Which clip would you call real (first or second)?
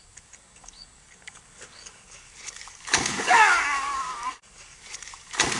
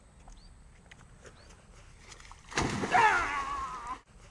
second